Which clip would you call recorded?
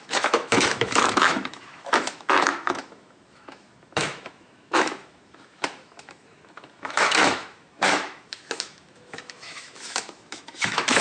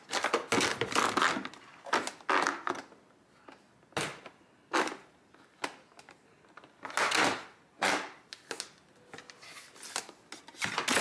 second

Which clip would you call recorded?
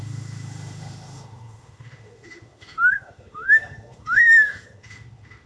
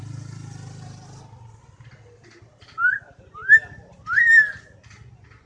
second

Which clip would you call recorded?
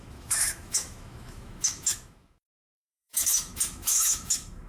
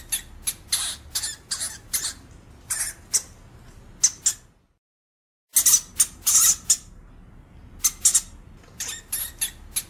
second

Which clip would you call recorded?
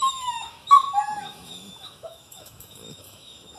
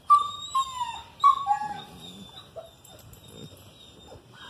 second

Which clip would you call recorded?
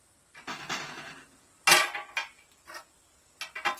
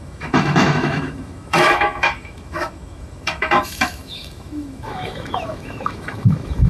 first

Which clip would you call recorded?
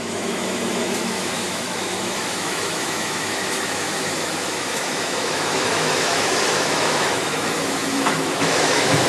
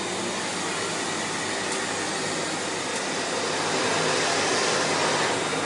second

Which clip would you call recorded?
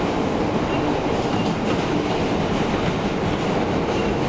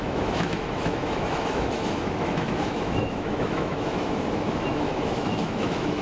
first